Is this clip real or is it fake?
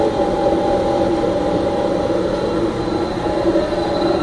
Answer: real